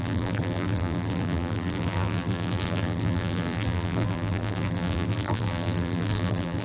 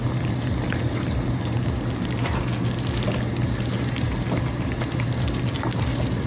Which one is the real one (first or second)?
second